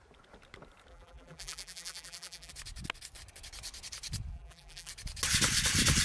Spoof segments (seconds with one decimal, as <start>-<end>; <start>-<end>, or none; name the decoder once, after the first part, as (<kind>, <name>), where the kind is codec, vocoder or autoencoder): 0.9-2.5 (vocoder, BigVGAN v2); 4.3-4.9